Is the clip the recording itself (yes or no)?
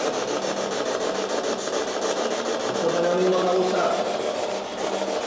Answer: yes